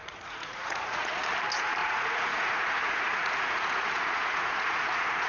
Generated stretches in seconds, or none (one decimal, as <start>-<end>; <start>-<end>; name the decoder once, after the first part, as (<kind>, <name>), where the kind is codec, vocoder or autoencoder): 0.0-1.1 (vocoder, Vocos); 1.8-5.3